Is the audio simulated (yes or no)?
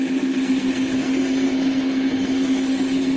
yes